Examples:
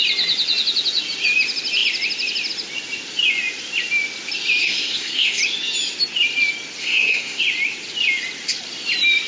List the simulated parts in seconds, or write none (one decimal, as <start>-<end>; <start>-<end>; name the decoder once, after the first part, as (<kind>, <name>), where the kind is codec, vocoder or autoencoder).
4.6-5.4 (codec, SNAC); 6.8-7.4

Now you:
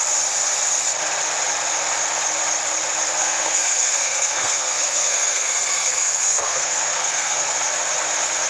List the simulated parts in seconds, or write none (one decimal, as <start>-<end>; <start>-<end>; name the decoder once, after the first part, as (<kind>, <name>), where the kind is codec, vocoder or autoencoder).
3.2-7.5 (codec, SNAC)

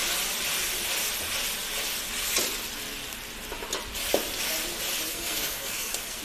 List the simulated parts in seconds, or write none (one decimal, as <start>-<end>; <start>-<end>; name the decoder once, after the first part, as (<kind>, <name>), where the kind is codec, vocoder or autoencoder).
5.1-6.2 (codec, SNAC)

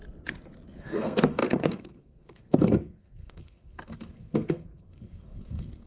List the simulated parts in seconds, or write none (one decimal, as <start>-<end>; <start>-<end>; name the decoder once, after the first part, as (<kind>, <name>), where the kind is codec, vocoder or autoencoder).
0.8-5.9 (codec, SNAC)

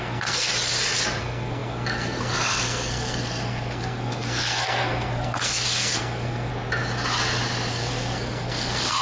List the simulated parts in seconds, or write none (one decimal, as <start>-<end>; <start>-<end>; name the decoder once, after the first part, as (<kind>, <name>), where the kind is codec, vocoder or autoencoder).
0.0-0.5 (codec, SNAC); 1.2-6.5; 7.7-9.0

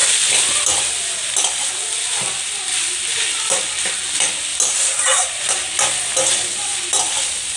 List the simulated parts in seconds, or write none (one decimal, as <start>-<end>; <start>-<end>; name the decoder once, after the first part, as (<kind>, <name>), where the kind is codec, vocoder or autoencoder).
none

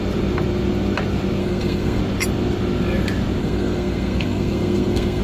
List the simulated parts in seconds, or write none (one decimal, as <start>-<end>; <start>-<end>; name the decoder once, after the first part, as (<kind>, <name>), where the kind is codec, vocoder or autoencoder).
1.4-2.0 (codec, SNAC); 3.4-5.2

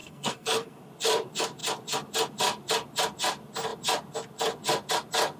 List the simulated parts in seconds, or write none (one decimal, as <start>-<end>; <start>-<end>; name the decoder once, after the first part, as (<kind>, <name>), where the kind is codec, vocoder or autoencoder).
0.0-0.8 (codec, SNAC)